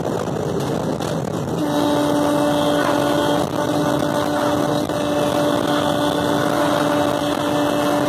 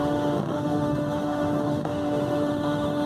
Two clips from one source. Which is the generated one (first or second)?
second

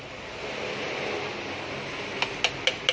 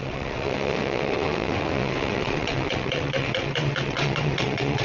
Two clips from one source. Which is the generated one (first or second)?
second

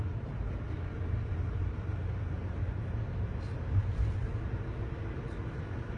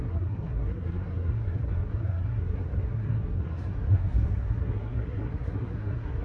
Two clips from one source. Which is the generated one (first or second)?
second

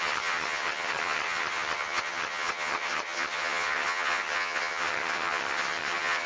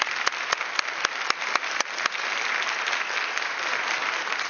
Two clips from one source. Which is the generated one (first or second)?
first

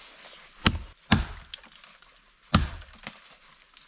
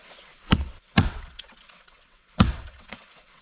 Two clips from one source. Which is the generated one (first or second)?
second